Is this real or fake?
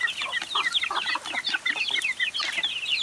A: real